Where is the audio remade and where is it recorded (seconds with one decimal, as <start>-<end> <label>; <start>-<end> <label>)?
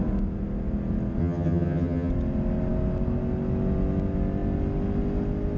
0.0-1.2 recorded; 1.2-2.1 remade; 2.1-5.6 recorded